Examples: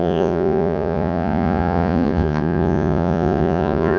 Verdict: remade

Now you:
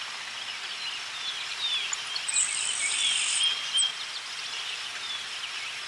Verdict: recorded